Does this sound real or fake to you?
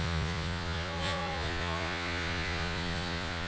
fake